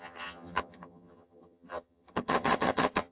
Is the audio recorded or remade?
remade